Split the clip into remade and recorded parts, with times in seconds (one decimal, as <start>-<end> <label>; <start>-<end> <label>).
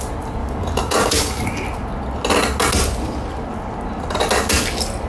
0.0-0.4 recorded; 0.4-1.4 remade; 1.4-5.1 recorded